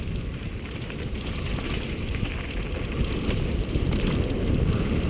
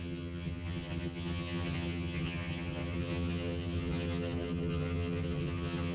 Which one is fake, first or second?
second